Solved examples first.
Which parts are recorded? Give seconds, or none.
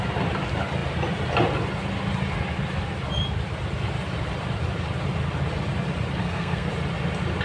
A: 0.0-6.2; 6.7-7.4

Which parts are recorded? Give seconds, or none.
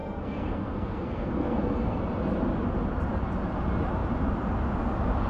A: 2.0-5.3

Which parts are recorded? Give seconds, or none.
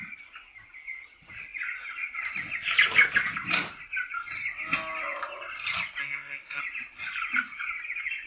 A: 0.0-6.0; 6.6-8.3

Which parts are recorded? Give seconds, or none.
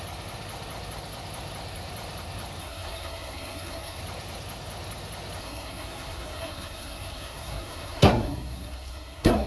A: 0.0-2.6; 4.0-5.4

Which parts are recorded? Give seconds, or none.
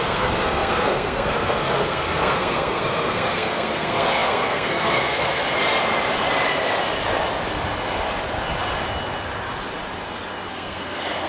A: 5.4-10.5